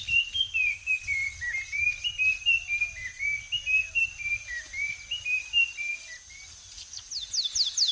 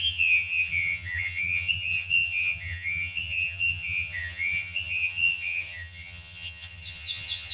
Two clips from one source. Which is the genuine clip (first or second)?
first